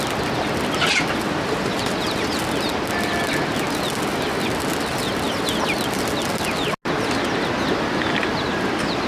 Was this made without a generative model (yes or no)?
yes